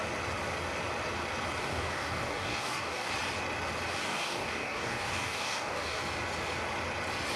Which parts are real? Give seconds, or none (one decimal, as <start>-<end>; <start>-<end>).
0.0-1.6; 3.1-3.9; 6.0-7.4